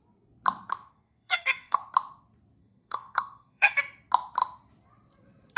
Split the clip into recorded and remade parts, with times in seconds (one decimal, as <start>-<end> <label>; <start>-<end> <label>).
0.0-0.9 recorded; 0.9-1.8 remade; 1.8-2.6 recorded; 2.6-3.8 remade; 3.8-5.6 recorded